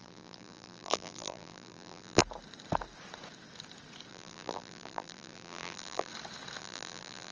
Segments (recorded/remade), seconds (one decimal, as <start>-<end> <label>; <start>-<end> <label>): 0.0-2.2 remade; 2.2-4.1 recorded; 4.1-6.1 remade; 6.1-6.6 recorded; 6.6-7.3 remade